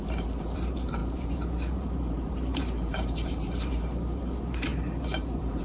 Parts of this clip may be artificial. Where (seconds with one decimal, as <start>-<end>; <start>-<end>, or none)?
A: 0.0-5.6